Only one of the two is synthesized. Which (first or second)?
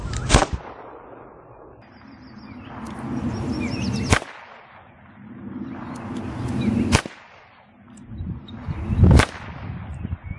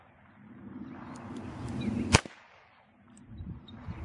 second